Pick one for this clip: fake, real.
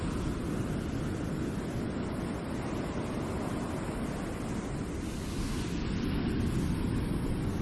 real